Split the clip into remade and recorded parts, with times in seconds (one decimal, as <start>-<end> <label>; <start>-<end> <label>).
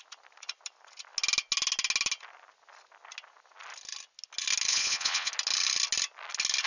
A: 0.0-4.7 recorded; 4.7-5.3 remade; 5.3-6.7 recorded